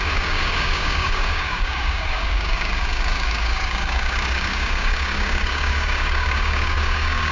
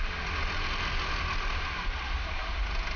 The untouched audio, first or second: second